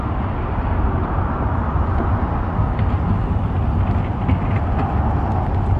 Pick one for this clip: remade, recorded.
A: recorded